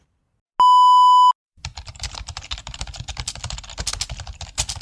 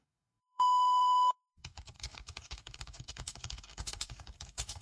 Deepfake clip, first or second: second